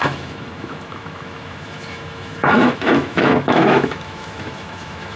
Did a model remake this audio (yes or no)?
yes